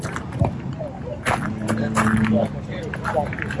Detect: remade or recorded recorded